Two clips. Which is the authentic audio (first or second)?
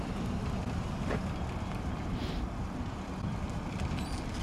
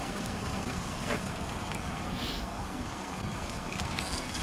first